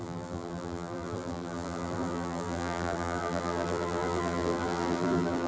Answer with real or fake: fake